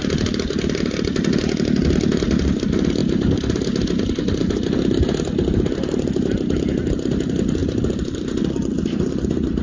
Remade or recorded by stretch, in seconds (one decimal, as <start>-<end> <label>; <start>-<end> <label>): 0.0-3.0 recorded; 3.0-4.0 remade; 4.0-7.6 recorded; 7.6-8.4 remade; 8.4-9.6 recorded